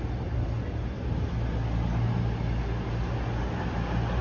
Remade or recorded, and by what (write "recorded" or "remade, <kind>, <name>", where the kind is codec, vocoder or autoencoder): recorded